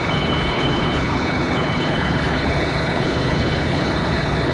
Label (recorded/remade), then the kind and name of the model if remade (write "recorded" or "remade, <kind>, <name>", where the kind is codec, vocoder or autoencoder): remade, codec, HILCodec